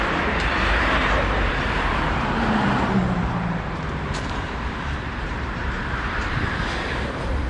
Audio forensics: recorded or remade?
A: remade